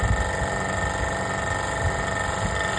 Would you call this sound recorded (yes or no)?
yes